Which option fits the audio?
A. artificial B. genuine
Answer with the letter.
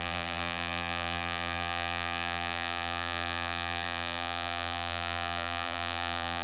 A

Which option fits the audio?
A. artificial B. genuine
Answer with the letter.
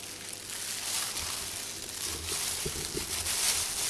B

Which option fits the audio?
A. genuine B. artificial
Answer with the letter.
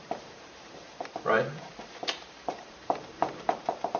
B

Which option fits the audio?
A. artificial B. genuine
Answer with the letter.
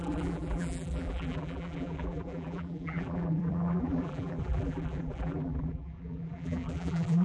A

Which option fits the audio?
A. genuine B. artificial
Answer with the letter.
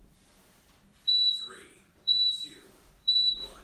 B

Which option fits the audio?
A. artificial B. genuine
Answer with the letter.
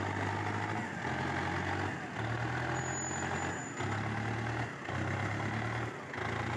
B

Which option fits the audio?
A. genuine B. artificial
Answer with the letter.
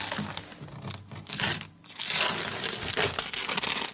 A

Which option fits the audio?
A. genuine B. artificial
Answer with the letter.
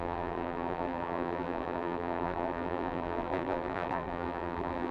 B